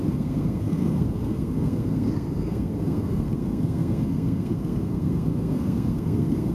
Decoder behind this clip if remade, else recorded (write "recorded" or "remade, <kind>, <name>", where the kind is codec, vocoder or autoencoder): remade, codec, SNAC